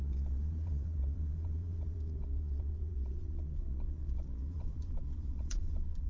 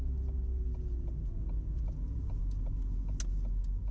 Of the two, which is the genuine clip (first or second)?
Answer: second